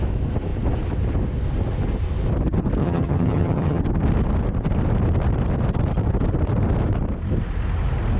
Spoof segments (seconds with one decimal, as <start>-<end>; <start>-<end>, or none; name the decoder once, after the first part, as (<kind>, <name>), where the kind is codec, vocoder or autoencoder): 2.8-3.8 (vocoder, HiFi-GAN)